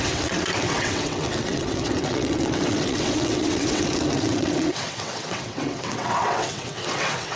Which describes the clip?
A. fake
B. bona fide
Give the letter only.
A